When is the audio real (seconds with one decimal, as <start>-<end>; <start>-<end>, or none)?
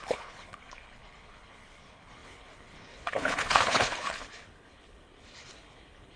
none